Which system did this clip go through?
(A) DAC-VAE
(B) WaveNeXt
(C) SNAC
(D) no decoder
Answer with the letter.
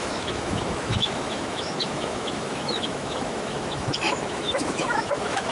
A